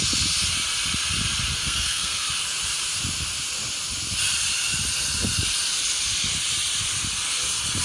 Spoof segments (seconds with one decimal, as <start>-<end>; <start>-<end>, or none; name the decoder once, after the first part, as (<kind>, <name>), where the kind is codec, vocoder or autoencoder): 1.6-2.3 (codec, SNAC)